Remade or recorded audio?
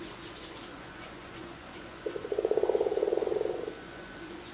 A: remade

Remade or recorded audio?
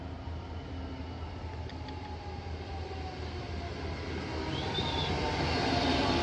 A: recorded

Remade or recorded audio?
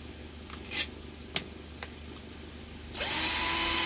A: recorded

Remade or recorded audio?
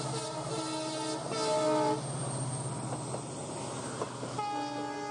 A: recorded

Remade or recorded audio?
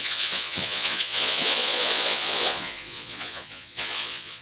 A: remade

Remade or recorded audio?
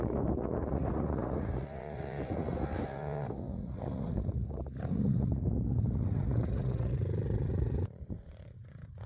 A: remade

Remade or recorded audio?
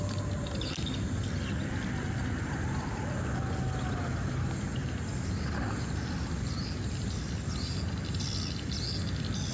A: recorded